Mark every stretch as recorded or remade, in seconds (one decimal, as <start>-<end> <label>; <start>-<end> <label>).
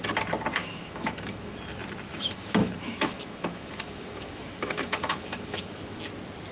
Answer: 0.0-0.6 recorded; 0.6-1.6 remade; 1.6-2.1 recorded; 2.1-6.0 remade; 6.0-6.5 recorded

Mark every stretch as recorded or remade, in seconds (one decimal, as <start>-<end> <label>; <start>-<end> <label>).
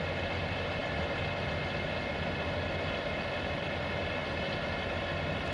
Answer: 0.0-0.8 recorded; 0.8-1.3 remade; 1.3-5.5 recorded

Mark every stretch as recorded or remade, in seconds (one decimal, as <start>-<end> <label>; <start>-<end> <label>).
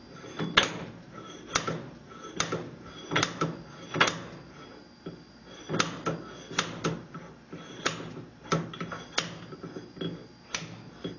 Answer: 0.0-11.2 recorded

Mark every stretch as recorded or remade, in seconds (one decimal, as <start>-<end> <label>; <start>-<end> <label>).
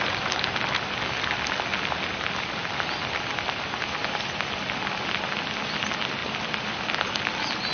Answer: 0.0-7.7 recorded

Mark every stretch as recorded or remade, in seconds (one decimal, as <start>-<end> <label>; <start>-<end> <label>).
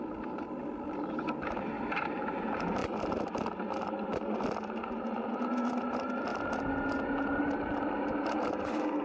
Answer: 0.0-9.0 recorded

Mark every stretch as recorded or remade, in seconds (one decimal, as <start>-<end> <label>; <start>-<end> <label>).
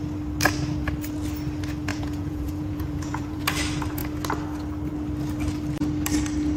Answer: 0.0-1.9 recorded; 1.9-3.4 remade; 3.4-6.6 recorded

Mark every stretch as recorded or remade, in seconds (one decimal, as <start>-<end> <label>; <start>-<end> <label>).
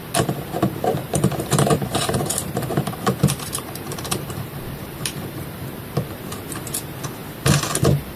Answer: 0.0-1.0 recorded; 1.0-5.9 remade; 5.9-8.2 recorded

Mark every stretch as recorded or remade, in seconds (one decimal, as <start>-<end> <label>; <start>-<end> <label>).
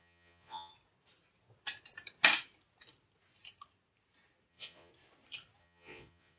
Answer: 0.0-0.7 remade; 0.7-4.5 recorded; 4.5-4.9 remade; 4.9-5.6 recorded; 5.6-6.4 remade